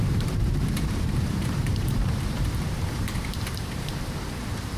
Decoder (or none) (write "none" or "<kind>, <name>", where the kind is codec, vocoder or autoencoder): vocoder, BigVGAN v2